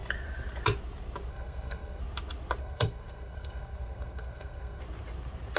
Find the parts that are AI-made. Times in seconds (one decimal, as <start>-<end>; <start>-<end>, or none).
1.3-2.0; 2.6-4.8